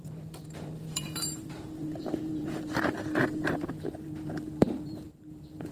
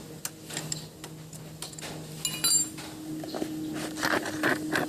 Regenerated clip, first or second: first